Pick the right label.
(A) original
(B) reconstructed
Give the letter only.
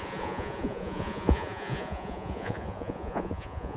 B